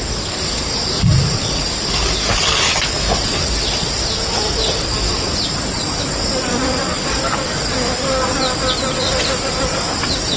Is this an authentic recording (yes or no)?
yes